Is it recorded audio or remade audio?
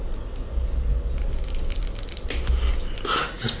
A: recorded